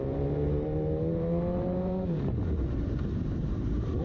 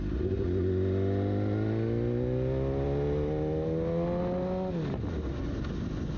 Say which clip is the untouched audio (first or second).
second